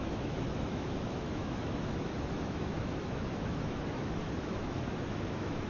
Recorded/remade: remade